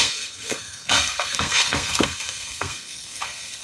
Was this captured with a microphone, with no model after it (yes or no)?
no